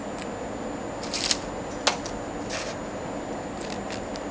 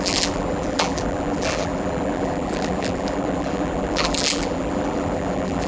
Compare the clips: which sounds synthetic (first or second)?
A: second